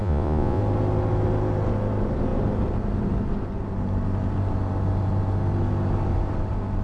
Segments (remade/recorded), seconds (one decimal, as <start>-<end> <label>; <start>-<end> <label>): 0.0-0.6 remade; 0.6-6.8 recorded